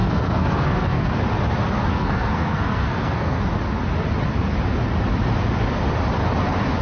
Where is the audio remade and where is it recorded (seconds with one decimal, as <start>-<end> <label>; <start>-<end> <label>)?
0.0-1.1 remade; 1.1-1.9 recorded; 1.9-3.4 remade; 3.4-6.8 recorded